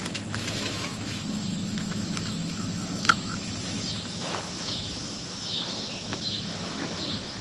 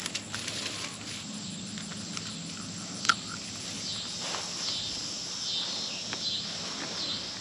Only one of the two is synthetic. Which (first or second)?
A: first